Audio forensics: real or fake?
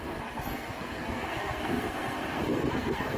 fake